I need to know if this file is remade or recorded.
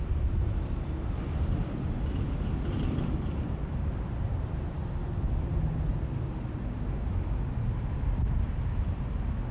recorded